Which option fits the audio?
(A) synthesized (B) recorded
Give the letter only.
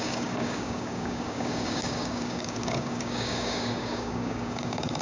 A